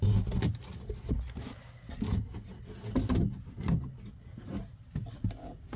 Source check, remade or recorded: recorded